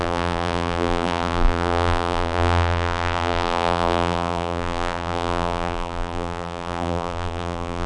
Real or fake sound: fake